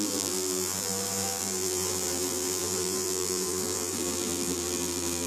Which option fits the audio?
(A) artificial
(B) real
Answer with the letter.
A